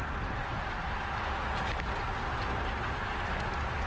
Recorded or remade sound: recorded